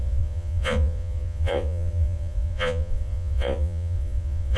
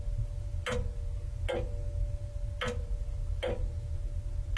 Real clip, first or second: second